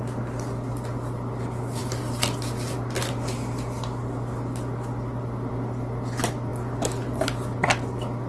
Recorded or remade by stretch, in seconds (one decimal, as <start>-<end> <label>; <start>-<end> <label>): 0.0-8.3 recorded